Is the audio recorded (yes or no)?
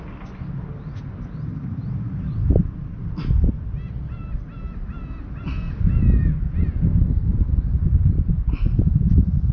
yes